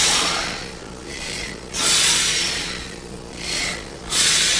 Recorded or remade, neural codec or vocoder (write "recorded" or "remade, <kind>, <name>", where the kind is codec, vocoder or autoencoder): remade, vocoder, Vocos